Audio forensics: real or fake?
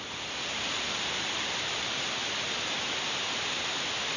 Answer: fake